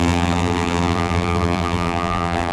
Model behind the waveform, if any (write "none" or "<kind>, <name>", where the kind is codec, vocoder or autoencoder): vocoder, BigVGAN v2